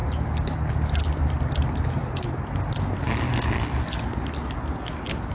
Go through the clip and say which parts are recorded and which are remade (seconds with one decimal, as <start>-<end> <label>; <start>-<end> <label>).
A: 0.0-5.3 recorded